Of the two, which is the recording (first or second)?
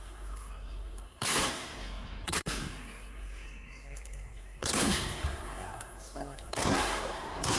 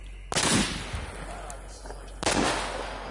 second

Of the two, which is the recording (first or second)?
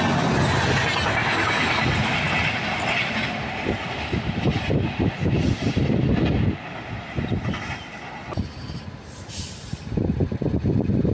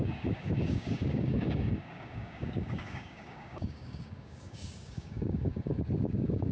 first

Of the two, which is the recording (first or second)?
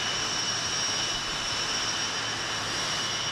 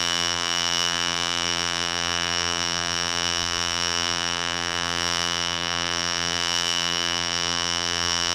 first